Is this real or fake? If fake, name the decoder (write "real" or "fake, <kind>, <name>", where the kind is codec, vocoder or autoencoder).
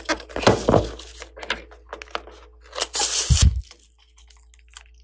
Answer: real